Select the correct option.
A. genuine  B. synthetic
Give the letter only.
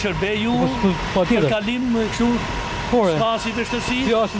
A